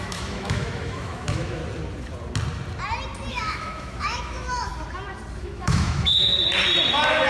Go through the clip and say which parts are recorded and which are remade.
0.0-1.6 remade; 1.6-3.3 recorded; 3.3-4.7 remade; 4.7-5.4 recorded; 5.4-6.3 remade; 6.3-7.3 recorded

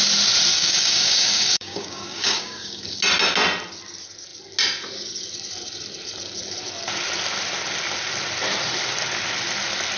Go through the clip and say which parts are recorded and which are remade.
0.0-0.5 recorded; 0.5-2.8 remade; 2.8-10.0 recorded

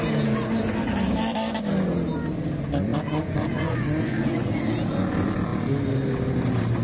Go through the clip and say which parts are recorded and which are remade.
0.0-2.9 recorded; 2.9-4.7 remade; 4.7-6.8 recorded

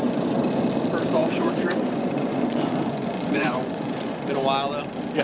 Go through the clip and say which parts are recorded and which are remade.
0.0-1.2 recorded; 1.2-4.2 remade; 4.2-5.2 recorded